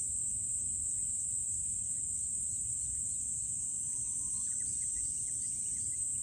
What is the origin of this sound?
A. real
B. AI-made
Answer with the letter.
A